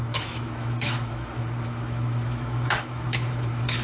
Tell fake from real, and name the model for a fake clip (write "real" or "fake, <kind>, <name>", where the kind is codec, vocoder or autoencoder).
fake, autoencoder, DAC-VAE